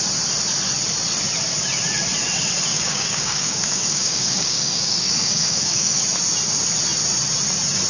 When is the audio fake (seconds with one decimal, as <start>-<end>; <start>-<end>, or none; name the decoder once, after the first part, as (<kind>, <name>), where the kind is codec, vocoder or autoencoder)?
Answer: 2.7-6.0 (codec, DAC)